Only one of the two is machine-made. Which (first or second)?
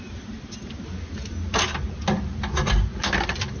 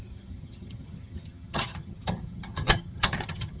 second